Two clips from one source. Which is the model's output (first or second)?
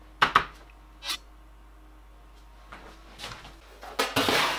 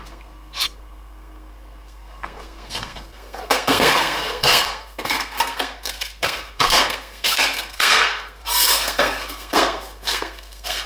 second